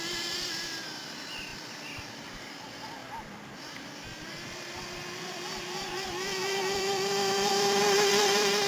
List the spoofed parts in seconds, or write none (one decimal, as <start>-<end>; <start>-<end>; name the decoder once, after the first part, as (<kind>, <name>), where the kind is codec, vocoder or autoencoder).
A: 0.0-8.7 (vocoder, BigVGAN v2)

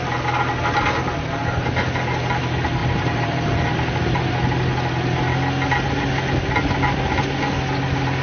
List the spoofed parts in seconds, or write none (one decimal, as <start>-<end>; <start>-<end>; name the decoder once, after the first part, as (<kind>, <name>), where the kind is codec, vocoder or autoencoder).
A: 2.8-4.3 (vocoder, BigVGAN v2)

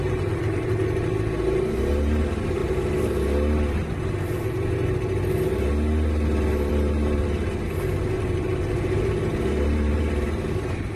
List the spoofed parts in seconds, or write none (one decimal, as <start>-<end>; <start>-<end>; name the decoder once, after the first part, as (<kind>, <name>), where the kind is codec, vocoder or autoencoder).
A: 0.0-2.6 (vocoder, BigVGAN v2); 6.7-11.0

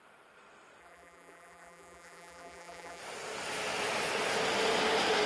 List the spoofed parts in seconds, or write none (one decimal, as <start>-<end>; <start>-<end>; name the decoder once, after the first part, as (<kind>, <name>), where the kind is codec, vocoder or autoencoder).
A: 0.8-3.0 (vocoder, BigVGAN v2)

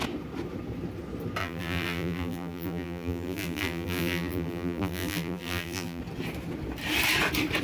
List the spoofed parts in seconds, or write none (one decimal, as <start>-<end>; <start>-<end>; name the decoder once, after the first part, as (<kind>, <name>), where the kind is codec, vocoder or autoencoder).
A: 1.4-6.0 (vocoder, BigVGAN v2)

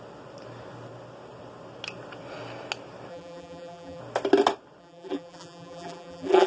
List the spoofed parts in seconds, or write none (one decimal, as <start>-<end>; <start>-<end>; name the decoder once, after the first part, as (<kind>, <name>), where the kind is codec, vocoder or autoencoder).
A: 3.1-4.0 (vocoder, BigVGAN v2); 4.8-6.5

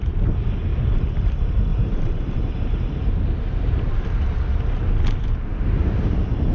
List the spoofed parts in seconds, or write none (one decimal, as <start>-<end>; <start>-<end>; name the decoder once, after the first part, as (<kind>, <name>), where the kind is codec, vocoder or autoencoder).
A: 1.7-4.9 (vocoder, BigVGAN v2)